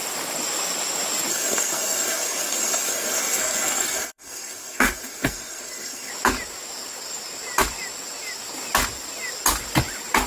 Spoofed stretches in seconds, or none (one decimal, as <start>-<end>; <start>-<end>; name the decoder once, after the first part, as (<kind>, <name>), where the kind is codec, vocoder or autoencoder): 1.3-6.1 (codec, SNAC)